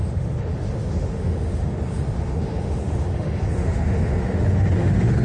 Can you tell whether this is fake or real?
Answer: fake